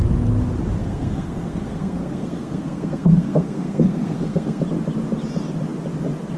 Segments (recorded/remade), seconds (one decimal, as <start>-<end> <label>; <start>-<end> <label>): 0.0-0.8 recorded; 0.8-4.6 remade; 4.6-6.4 recorded